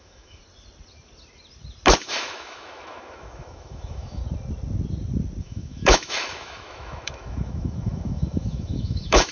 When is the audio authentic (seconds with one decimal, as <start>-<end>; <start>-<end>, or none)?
0.4-2.0; 4.2-5.4